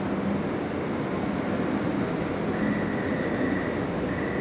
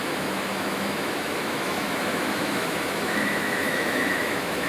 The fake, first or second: second